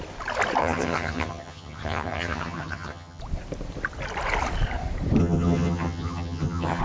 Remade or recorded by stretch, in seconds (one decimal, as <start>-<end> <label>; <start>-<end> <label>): 0.0-0.6 recorded; 0.6-3.2 remade; 3.2-5.2 recorded; 5.2-6.8 remade